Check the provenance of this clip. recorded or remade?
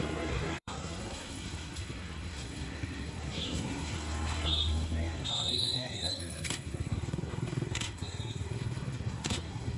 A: remade